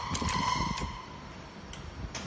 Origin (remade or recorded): recorded